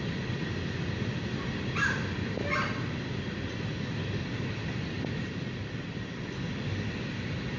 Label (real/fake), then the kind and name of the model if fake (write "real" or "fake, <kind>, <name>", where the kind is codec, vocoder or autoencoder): real